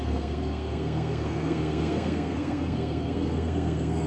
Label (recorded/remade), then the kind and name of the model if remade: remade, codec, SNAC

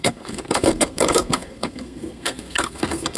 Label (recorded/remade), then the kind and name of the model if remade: remade, codec, SNAC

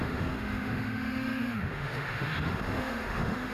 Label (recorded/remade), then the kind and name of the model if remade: remade, autoencoder, DAC-VAE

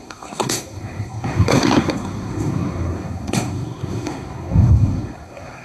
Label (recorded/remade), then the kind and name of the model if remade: remade, codec, SNAC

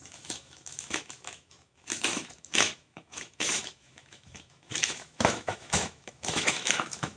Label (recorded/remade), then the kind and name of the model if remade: remade, autoencoder, DAC-VAE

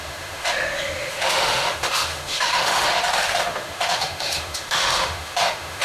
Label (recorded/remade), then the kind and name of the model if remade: remade, autoencoder, DAC-VAE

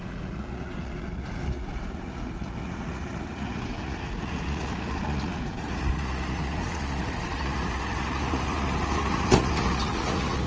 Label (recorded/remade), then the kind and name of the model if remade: remade, vocoder, Vocos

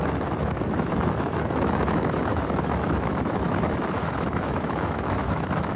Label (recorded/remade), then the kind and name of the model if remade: remade, autoencoder, DAC-VAE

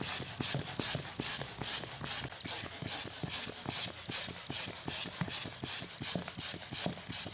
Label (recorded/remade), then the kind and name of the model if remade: recorded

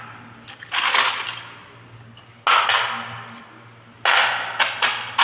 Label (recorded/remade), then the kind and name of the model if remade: recorded